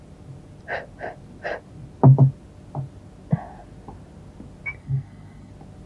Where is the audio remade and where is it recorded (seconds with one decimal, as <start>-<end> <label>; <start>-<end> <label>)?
0.0-4.8 recorded; 4.8-5.5 remade; 5.5-5.9 recorded